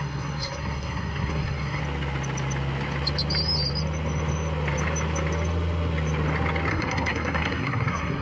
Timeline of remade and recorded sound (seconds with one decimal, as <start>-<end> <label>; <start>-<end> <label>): 0.0-1.8 remade; 1.8-6.7 recorded; 6.7-8.2 remade

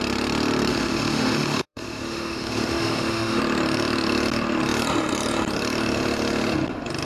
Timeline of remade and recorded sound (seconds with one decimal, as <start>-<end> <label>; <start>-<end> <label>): 0.0-0.7 recorded; 0.7-3.4 remade; 3.4-7.1 recorded

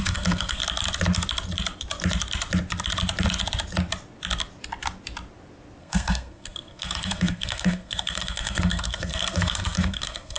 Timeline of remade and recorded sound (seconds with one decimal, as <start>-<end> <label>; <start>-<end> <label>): 0.0-0.6 remade; 0.6-5.8 recorded; 5.8-10.4 remade

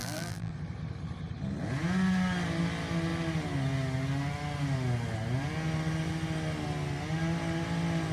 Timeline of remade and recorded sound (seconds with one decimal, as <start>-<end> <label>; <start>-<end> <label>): 0.0-0.5 remade; 0.5-8.1 recorded